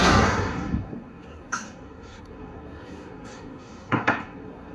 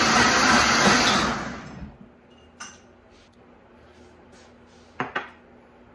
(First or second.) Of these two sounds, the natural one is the second